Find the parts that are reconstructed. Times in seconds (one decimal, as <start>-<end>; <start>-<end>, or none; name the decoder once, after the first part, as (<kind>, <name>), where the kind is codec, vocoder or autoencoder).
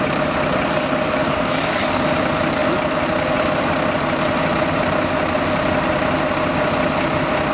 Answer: 1.2-2.0 (codec, DAC)